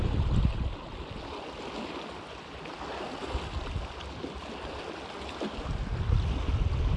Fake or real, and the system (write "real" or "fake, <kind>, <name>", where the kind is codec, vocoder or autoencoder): real